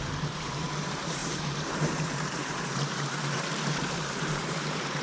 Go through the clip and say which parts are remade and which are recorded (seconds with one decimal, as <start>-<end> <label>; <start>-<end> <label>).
0.0-5.0 remade